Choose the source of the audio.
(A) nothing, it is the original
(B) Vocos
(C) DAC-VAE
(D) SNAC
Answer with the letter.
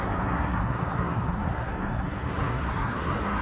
D